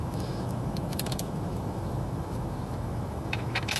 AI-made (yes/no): yes